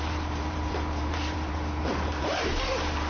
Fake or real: fake